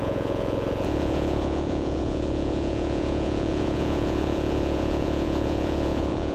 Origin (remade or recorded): remade